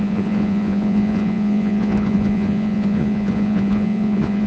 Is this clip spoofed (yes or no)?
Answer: yes